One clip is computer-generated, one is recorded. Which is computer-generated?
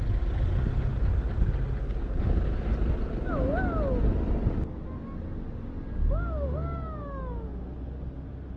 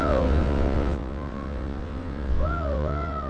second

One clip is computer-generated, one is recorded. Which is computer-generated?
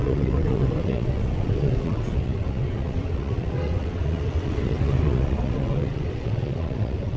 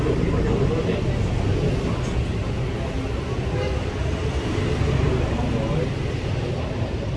first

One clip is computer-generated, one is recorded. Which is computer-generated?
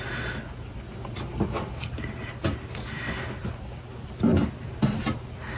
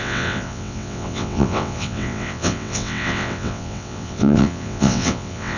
second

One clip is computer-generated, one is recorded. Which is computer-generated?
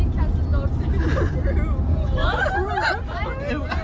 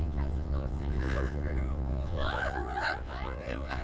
second